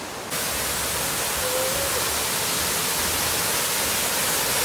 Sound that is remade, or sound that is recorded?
recorded